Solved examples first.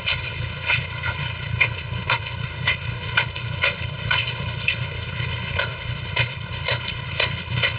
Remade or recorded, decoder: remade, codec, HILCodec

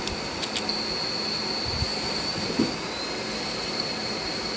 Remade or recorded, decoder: recorded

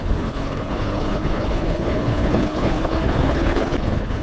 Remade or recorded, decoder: remade, codec, HILCodec